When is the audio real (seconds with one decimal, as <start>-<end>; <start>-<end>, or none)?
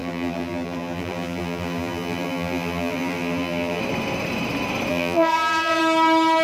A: 3.8-4.9; 5.8-6.4